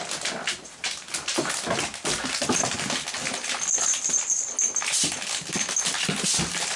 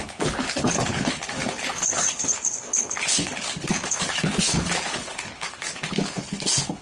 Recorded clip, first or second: first